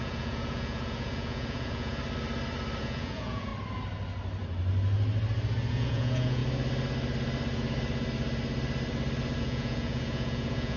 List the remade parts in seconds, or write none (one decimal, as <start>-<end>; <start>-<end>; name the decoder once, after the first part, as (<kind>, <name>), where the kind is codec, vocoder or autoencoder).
0.0-2.0 (vocoder, Vocos); 2.8-3.5; 5.7-6.4; 9.4-10.8